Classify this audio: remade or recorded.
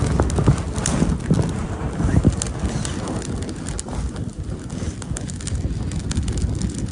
recorded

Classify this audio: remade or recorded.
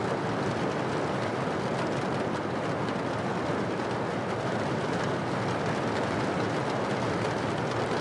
recorded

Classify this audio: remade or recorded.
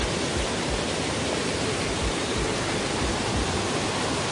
recorded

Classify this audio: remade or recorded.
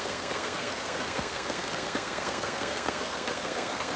remade